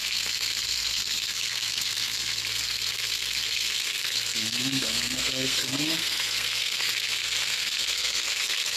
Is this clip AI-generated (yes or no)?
yes